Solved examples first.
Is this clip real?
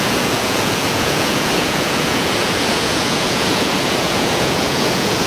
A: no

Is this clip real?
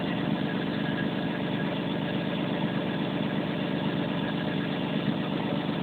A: yes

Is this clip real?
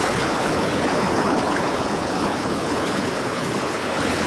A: no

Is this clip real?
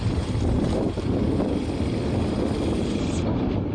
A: yes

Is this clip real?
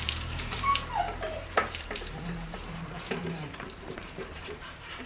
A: no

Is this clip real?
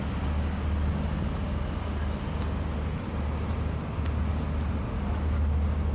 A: yes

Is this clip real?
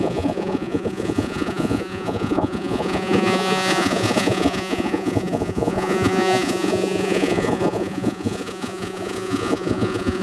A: no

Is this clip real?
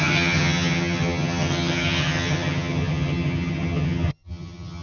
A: no